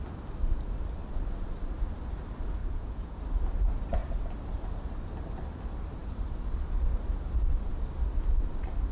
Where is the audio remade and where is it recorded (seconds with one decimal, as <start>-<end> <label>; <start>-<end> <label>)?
0.0-2.6 recorded; 2.6-3.2 remade; 3.2-8.9 recorded